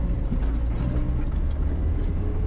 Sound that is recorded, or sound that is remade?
recorded